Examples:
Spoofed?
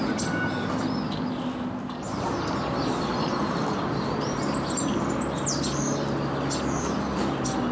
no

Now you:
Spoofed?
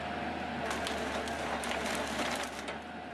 no